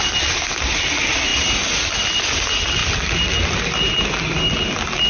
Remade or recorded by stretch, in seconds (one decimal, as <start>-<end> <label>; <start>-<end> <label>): 0.0-5.1 recorded